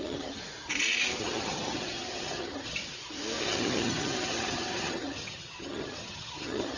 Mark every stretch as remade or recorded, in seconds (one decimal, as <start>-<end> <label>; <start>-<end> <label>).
0.0-0.4 remade; 0.4-1.2 recorded; 1.2-2.8 remade; 2.8-3.4 recorded; 3.4-6.8 remade